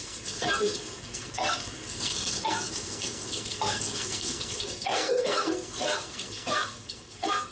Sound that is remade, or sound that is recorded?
remade